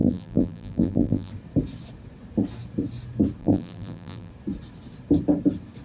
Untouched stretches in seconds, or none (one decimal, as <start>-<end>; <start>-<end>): 1.3-3.4; 4.3-5.8

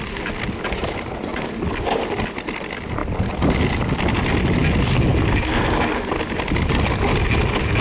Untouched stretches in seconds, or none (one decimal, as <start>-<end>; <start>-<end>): 0.0-7.8

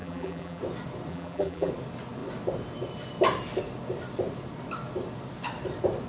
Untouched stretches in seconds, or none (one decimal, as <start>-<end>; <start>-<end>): 0.6-1.1; 1.7-6.1

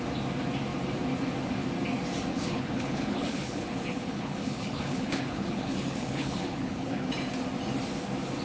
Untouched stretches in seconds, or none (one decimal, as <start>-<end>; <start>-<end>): 0.0-2.3; 7.1-8.4